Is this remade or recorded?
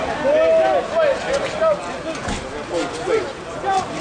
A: recorded